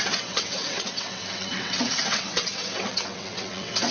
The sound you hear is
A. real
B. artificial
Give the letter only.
B